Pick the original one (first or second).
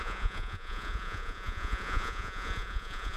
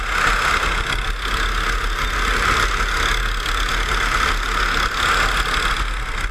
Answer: second